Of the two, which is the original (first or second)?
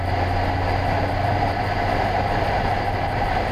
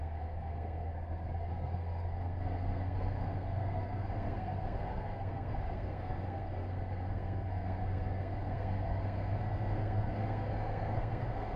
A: first